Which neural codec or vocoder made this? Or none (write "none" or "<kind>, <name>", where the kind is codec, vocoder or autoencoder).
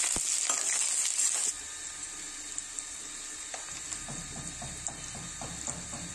none